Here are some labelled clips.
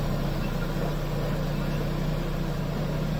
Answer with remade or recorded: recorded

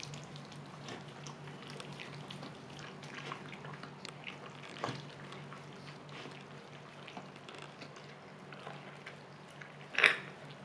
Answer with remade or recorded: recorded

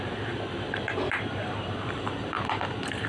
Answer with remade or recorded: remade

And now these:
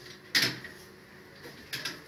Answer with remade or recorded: recorded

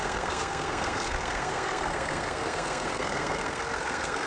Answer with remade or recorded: remade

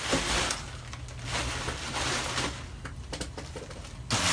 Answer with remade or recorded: recorded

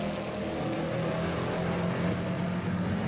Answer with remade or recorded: recorded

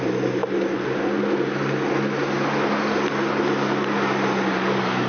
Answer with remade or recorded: recorded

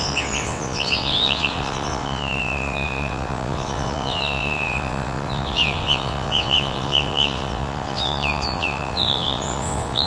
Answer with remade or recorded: remade